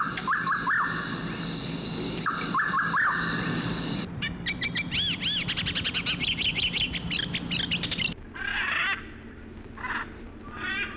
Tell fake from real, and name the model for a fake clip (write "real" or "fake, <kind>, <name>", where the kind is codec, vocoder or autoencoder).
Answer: real